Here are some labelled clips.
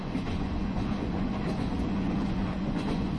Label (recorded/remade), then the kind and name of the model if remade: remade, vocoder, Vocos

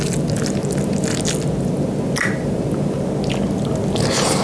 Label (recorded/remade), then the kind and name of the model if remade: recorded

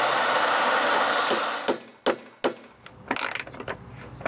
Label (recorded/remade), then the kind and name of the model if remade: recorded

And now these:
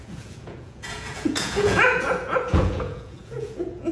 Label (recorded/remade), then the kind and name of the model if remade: remade, vocoder, Vocos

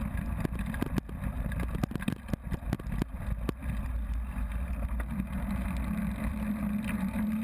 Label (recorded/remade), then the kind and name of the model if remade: recorded